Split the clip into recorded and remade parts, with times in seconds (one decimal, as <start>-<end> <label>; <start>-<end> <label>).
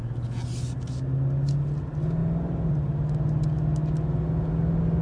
0.0-5.0 recorded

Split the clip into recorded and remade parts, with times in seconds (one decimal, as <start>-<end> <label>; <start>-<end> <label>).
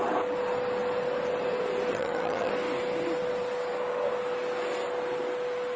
0.0-1.9 recorded; 1.9-2.5 remade; 2.5-5.8 recorded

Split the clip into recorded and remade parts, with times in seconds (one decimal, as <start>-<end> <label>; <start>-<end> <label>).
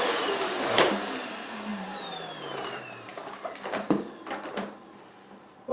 0.0-3.1 remade; 3.1-4.5 recorded; 4.5-5.7 remade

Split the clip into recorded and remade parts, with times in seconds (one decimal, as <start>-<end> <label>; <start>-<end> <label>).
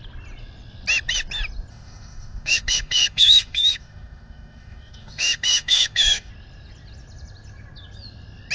0.0-1.7 recorded; 1.7-6.3 remade; 6.3-8.5 recorded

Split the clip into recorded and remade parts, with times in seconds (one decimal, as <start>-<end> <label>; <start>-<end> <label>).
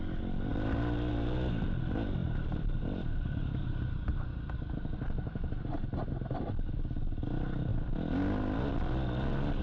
0.0-2.2 recorded; 2.2-3.9 remade; 3.9-9.6 recorded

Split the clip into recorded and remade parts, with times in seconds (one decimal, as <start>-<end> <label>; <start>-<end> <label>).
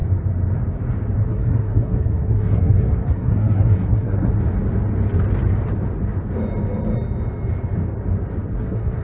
0.0-1.3 recorded; 1.3-4.3 remade; 4.3-8.5 recorded; 8.5-9.0 remade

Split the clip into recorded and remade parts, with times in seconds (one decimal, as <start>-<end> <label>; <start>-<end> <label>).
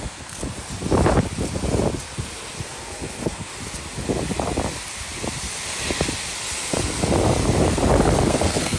0.0-0.4 remade; 0.4-2.6 recorded; 2.6-3.5 remade; 3.5-8.3 recorded; 8.3-8.8 remade